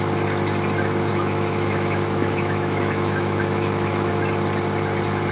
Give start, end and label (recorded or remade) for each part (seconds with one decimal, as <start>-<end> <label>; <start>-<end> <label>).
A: 0.0-1.1 recorded; 1.1-4.1 remade; 4.1-5.3 recorded